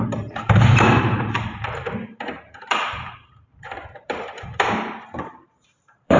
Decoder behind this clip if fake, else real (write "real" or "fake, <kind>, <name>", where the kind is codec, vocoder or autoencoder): fake, vocoder, BigVGAN v2